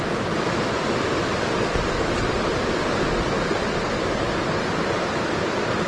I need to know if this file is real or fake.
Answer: real